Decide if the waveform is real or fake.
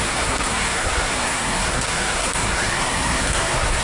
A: fake